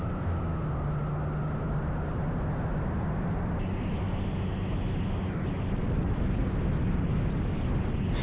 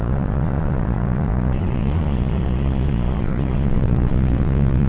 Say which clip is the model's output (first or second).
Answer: second